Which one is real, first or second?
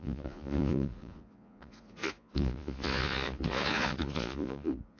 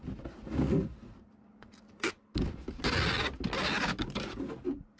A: second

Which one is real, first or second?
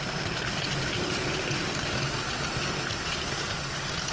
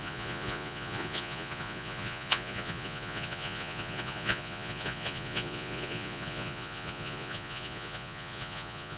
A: first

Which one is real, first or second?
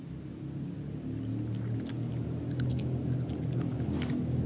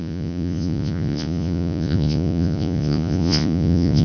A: first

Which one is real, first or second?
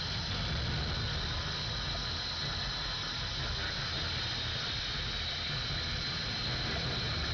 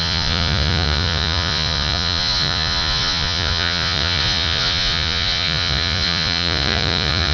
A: first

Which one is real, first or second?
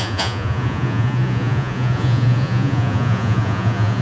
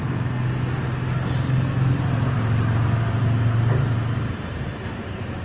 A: second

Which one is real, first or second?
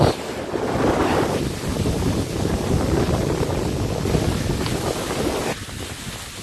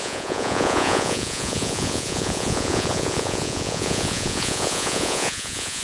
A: first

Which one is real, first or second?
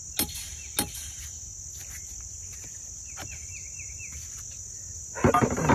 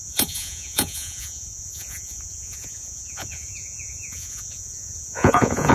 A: first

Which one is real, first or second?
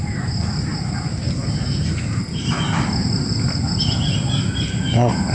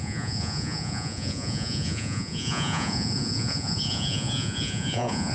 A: first